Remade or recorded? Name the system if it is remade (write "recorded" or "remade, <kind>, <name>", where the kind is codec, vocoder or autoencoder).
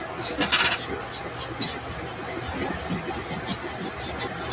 recorded